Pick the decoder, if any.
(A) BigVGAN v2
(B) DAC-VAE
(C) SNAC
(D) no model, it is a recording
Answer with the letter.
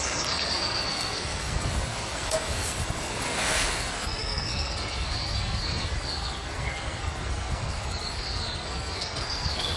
C